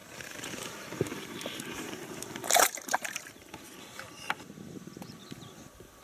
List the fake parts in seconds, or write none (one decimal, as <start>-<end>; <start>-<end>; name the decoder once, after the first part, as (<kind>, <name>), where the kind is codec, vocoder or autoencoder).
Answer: 0.0-3.6 (vocoder, BigVGAN v2)